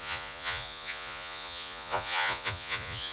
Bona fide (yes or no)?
no